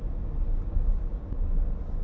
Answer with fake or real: real